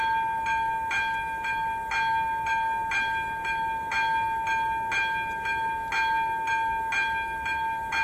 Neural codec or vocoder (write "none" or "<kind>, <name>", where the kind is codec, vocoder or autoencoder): none